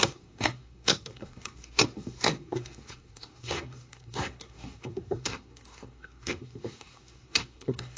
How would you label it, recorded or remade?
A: remade